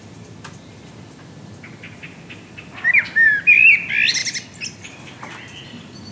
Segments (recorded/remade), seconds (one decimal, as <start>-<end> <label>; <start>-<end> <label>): 0.0-6.1 recorded